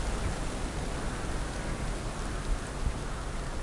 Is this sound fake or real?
real